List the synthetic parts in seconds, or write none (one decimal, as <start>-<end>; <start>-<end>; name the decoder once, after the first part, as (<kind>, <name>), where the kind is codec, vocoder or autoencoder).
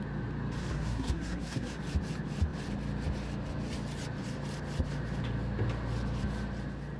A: 0.7-1.8 (codec, SNAC)